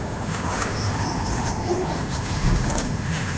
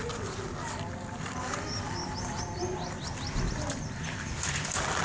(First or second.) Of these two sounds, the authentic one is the second